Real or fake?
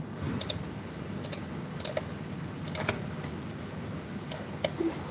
real